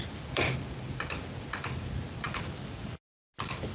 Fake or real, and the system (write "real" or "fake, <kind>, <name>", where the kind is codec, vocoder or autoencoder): real